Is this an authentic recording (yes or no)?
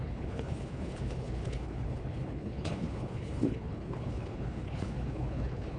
no